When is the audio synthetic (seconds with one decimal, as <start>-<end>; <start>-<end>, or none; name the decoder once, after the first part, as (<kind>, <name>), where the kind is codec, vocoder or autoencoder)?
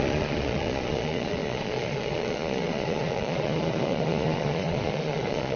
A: 0.0-5.6 (vocoder, Vocos)